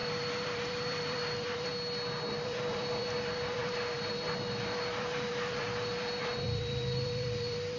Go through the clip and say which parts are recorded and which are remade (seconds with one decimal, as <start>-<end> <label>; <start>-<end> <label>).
0.0-1.7 remade; 1.7-2.3 recorded; 2.3-7.8 remade